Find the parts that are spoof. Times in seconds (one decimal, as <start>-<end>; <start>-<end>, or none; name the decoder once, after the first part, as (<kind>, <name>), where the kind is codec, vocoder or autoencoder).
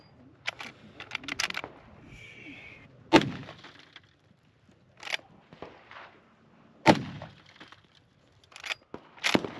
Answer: none